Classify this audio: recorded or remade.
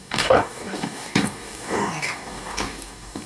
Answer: remade